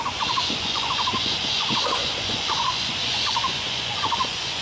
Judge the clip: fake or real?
fake